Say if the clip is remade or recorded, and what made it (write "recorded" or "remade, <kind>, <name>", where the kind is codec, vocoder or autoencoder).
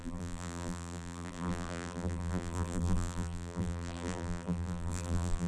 remade, vocoder, BigVGAN v2